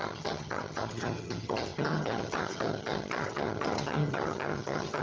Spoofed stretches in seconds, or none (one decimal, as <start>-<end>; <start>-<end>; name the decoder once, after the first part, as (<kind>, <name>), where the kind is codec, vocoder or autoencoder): 0.0-5.0 (vocoder, HiFi-GAN)